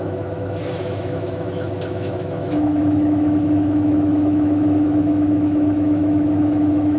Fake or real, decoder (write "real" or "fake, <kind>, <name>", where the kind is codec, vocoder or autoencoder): fake, autoencoder, DAC-VAE